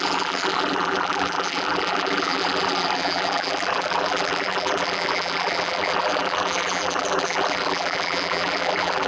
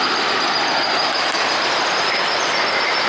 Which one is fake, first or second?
first